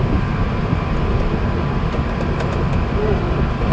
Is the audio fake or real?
real